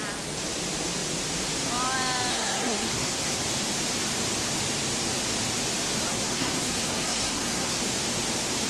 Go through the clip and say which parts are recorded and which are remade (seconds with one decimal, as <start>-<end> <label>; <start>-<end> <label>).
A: 0.0-2.3 recorded; 2.3-3.4 remade; 3.4-6.1 recorded; 6.1-7.8 remade; 7.8-8.7 recorded